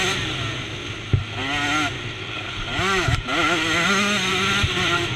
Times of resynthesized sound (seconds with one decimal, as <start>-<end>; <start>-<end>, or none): none